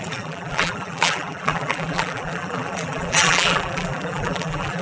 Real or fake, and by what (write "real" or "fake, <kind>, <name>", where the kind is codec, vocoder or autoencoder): fake, vocoder, BigVGAN v2